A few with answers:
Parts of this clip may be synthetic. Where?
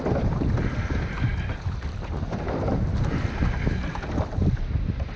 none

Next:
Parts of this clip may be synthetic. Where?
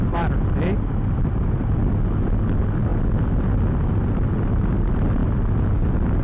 none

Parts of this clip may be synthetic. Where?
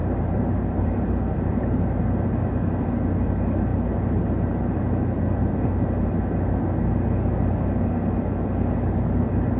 0.0-2.0; 3.7-5.7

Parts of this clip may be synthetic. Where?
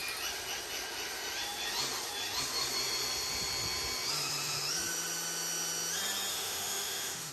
6.3-7.3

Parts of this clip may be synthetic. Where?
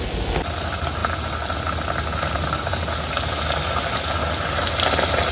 none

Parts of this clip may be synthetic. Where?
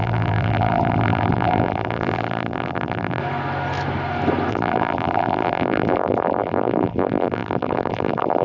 0.0-3.2; 4.5-8.4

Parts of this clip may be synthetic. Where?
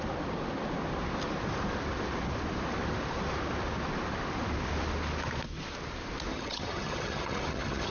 6.3-7.9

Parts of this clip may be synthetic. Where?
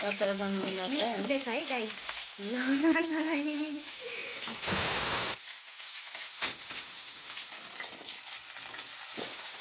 0.0-7.5; 9.2-9.6